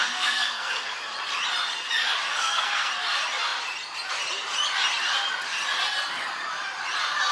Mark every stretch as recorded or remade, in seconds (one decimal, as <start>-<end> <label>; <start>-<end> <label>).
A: 0.0-0.9 remade; 0.9-2.3 recorded; 2.3-2.9 remade; 2.9-7.3 recorded